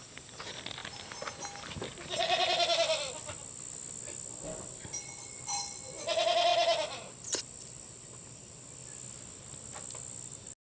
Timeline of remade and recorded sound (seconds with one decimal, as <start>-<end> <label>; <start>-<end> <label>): 0.0-10.6 recorded